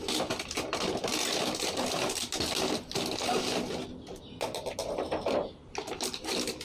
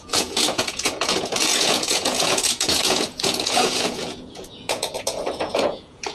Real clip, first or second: first